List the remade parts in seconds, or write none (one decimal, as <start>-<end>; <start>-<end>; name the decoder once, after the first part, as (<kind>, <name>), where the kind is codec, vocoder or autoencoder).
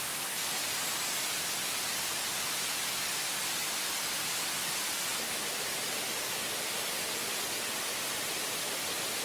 none